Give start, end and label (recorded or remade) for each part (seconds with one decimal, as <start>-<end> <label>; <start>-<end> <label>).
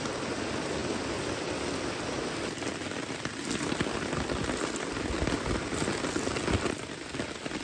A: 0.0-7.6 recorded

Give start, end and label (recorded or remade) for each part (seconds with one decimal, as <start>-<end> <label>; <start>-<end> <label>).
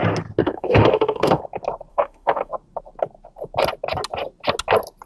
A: 0.0-0.4 recorded; 0.4-1.4 remade; 1.4-1.9 recorded; 1.9-2.5 remade; 2.5-5.1 recorded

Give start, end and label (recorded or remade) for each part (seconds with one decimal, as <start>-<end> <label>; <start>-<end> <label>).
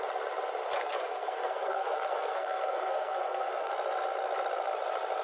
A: 0.0-0.8 recorded; 0.8-3.7 remade; 3.7-5.2 recorded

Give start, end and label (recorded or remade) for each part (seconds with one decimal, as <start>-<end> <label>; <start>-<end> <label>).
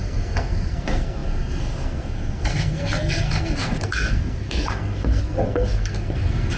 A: 0.0-6.6 remade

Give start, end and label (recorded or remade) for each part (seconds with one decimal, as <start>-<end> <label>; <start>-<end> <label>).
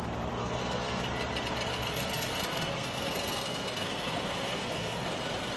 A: 0.0-0.4 recorded; 0.4-1.0 remade; 1.0-1.7 recorded; 1.7-5.1 remade; 5.1-5.6 recorded